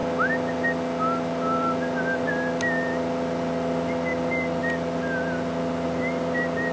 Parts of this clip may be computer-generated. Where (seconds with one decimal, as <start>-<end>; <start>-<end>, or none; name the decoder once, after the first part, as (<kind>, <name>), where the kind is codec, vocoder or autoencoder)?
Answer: none